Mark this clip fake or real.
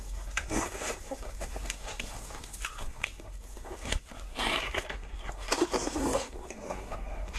fake